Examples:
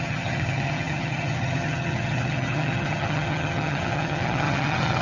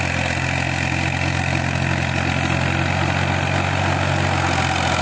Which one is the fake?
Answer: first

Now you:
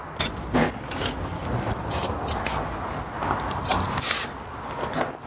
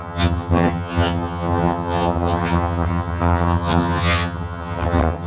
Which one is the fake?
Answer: second